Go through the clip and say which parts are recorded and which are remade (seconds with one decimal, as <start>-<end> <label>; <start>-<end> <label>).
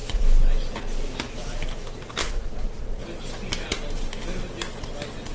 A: 0.0-2.2 recorded; 2.2-3.0 remade; 3.0-5.3 recorded